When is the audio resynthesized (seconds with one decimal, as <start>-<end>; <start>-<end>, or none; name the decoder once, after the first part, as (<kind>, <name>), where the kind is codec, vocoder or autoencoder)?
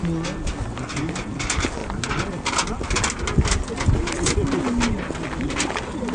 none